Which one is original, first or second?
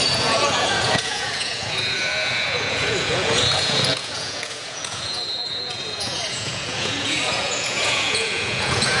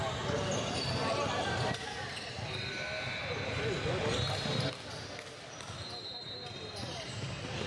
second